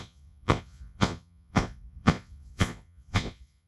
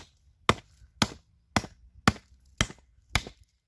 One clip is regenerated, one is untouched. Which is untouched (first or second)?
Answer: second